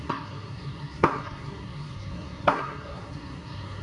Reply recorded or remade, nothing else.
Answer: remade